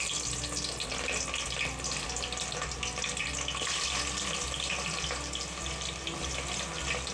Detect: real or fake real